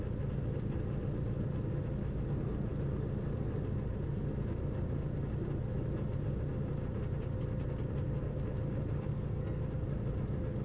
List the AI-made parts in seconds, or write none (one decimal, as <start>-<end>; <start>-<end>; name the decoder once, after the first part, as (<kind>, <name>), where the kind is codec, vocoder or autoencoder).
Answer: 9.1-9.6 (codec, SNAC)